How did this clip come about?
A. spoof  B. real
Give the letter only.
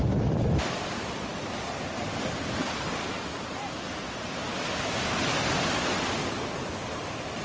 B